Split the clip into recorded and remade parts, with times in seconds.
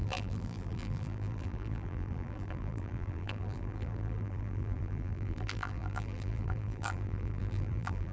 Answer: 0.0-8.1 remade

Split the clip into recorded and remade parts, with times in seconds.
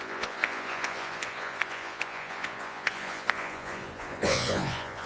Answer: 0.0-5.1 remade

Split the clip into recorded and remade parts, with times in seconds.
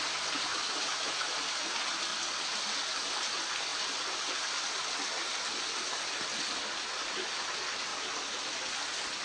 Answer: 0.0-0.5 recorded; 0.5-1.2 remade; 1.2-9.2 recorded